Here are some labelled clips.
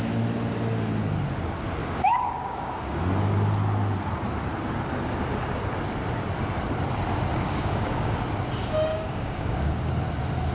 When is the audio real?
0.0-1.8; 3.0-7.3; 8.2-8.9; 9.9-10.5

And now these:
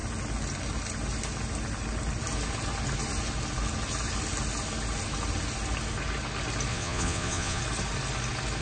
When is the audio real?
0.0-6.7; 7.6-8.6

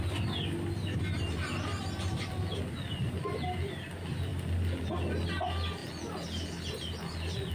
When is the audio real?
0.0-7.5

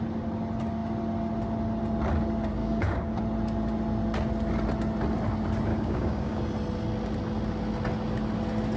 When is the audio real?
0.0-2.6; 3.1-5.7; 6.4-8.8

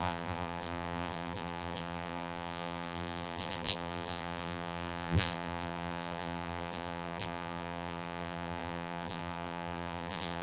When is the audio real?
none

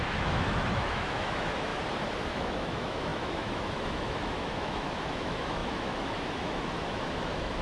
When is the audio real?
1.7-2.3